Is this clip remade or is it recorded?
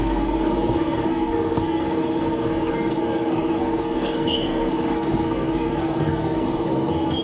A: remade